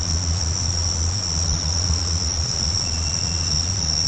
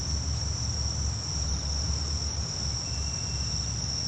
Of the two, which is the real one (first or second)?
second